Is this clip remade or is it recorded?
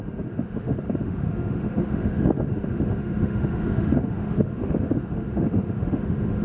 remade